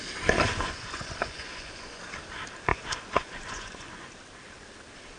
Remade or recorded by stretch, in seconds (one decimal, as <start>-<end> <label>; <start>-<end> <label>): 0.0-0.5 recorded; 0.5-2.0 remade; 2.0-2.7 recorded; 2.7-4.1 remade; 4.1-5.2 recorded